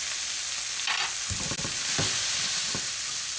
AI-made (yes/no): no